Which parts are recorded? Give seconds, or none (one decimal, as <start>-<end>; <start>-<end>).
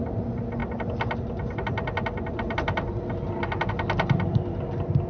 0.0-5.1